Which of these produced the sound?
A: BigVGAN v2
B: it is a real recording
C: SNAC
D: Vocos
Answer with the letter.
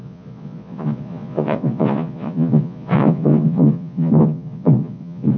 D